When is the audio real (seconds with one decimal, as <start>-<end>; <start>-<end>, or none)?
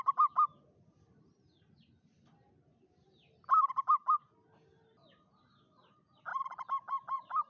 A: 0.0-6.3